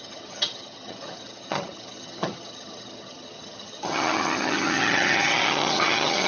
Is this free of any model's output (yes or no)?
no